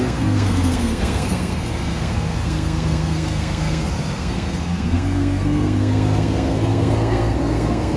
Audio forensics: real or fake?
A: fake